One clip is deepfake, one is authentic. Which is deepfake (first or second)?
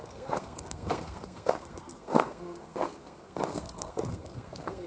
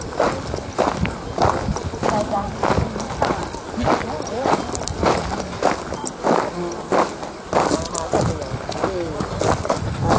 first